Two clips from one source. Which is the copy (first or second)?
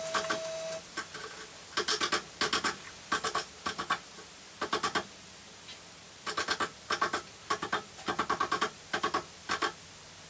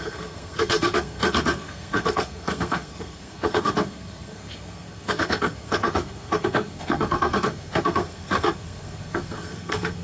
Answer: second